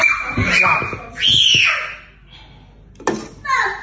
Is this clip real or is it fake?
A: real